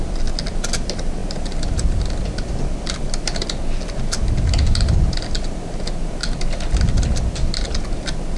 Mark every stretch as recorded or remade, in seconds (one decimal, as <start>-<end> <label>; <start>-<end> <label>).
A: 0.0-8.4 recorded